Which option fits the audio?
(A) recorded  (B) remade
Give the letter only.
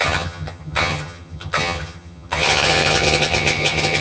B